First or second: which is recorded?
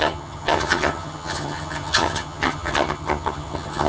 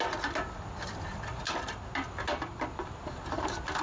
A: second